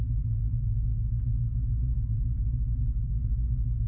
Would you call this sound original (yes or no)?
yes